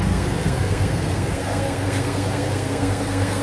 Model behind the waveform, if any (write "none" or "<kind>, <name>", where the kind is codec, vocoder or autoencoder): codec, SNAC